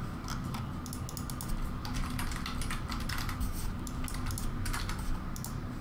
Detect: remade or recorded recorded